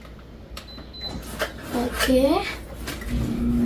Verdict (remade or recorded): recorded